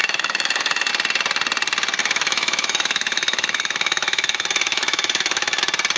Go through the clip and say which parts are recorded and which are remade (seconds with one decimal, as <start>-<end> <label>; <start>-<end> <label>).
0.0-0.9 remade; 0.9-2.0 recorded; 2.0-5.6 remade; 5.6-6.0 recorded